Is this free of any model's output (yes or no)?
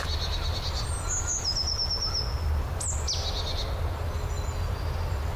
yes